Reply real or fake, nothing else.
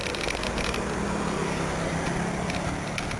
real